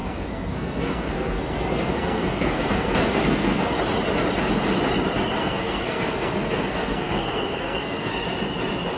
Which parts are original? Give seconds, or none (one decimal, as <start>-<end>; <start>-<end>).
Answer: 3.8-5.4; 8.1-9.0